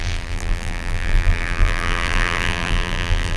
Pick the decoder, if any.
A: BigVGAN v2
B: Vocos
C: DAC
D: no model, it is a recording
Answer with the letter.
A